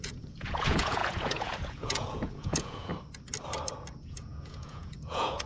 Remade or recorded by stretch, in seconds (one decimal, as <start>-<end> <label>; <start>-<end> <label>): 0.0-2.9 remade; 2.9-3.9 recorded; 3.9-5.5 remade